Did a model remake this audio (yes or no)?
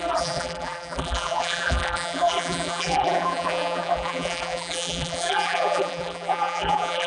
yes